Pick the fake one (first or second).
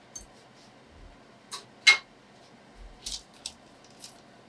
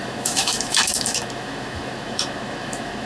second